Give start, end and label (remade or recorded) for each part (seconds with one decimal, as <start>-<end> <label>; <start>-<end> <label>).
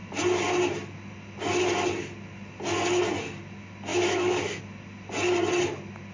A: 0.0-3.9 recorded; 3.9-4.6 remade; 4.6-6.1 recorded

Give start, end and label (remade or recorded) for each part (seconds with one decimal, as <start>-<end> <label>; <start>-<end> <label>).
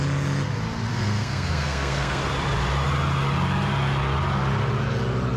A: 0.0-0.9 recorded; 0.9-2.2 remade; 2.2-5.4 recorded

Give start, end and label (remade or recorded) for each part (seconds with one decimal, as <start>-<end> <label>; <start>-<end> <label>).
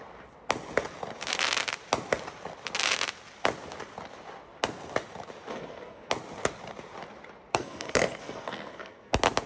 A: 0.0-5.5 recorded; 5.5-6.1 remade; 6.1-7.5 recorded; 7.5-9.1 remade; 9.1-9.5 recorded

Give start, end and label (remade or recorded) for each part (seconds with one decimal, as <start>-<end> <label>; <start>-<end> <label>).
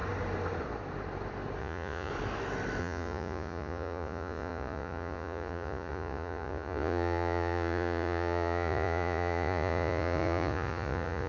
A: 0.0-1.6 recorded; 1.6-2.1 remade; 2.1-2.8 recorded; 2.8-11.3 remade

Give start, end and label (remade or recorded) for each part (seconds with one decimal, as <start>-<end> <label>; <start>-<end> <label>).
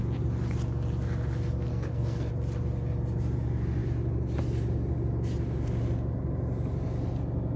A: 0.0-1.7 recorded; 1.7-2.3 remade; 2.3-7.6 recorded